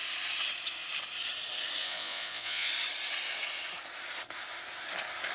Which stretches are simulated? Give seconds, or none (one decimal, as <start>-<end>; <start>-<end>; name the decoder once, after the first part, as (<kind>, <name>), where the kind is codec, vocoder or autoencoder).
1.8-2.7 (vocoder, Vocos)